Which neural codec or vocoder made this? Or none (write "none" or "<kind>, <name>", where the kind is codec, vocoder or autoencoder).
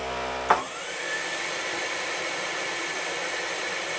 none